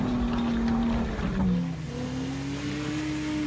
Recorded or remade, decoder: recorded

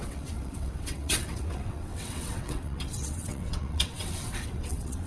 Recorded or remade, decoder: remade, vocoder, WaveNeXt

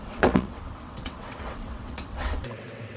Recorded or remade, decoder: remade, vocoder, WaveNeXt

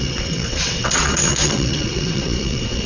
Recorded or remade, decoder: remade, vocoder, WaveNeXt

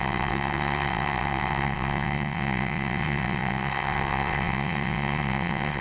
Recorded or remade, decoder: remade, vocoder, WaveNeXt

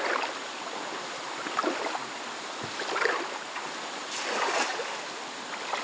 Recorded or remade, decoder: recorded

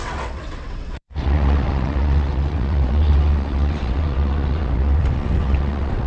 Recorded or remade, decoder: remade, vocoder, WaveNeXt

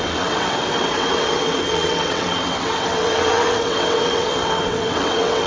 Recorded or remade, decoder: remade, vocoder, WaveNeXt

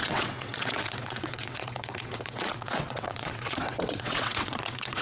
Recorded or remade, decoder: remade, vocoder, WaveNeXt